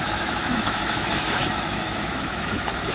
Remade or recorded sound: remade